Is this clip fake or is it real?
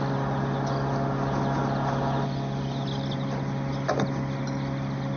real